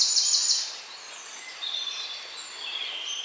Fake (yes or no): no